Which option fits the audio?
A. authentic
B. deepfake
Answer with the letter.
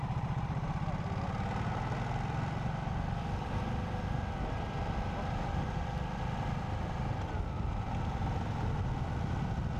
A